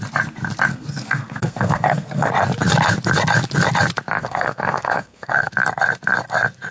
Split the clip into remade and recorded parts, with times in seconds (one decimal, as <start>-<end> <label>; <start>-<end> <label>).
0.0-0.7 recorded; 0.7-2.3 remade; 2.3-4.2 recorded; 4.2-5.5 remade; 5.5-6.7 recorded